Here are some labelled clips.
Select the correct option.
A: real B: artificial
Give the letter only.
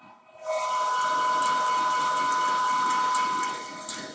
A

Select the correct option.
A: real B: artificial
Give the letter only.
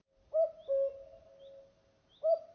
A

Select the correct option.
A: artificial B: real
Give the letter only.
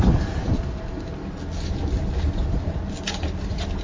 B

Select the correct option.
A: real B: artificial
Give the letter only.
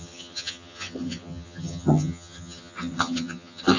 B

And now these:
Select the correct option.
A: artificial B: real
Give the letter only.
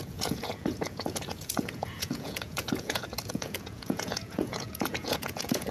A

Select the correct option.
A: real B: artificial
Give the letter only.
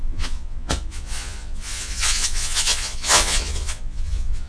B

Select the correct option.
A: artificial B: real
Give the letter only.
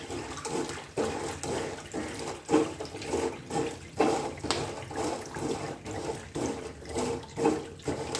B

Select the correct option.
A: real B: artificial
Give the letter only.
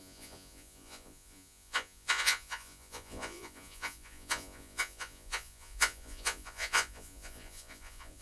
B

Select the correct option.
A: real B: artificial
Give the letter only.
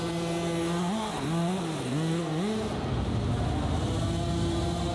A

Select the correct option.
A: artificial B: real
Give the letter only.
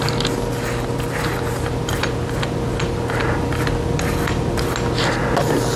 B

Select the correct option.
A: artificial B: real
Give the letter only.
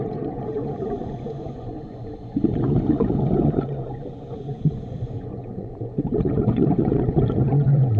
A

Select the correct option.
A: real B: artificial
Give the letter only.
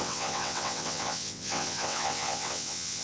B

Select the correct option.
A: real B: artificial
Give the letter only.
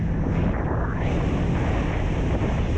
A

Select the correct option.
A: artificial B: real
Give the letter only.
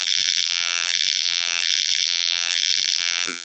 A